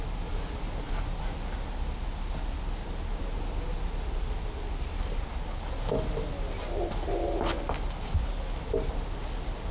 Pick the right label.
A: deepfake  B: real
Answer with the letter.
B